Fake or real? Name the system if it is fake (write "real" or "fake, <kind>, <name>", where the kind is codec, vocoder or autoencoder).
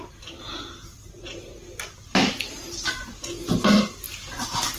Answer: real